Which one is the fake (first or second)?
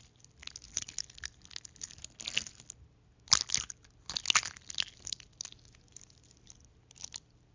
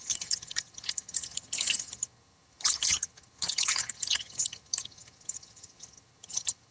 second